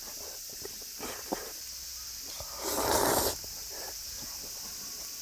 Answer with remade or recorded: recorded